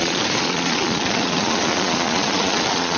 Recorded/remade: remade